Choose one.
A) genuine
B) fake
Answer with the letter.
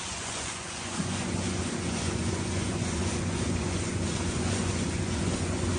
B